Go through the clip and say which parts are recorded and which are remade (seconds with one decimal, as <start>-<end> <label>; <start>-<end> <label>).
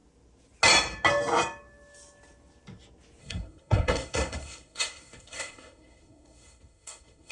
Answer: 0.0-3.2 recorded; 3.2-7.3 remade